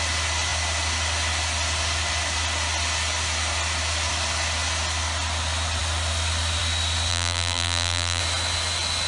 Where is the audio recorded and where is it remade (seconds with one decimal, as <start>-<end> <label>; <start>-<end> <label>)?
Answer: 0.0-7.1 recorded; 7.1-8.2 remade; 8.2-9.1 recorded